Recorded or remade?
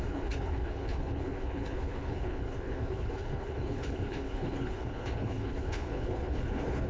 remade